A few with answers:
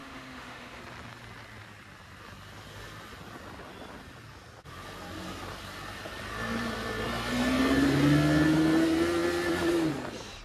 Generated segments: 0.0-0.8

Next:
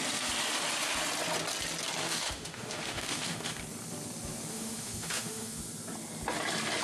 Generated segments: 2.0-3.6; 4.5-5.6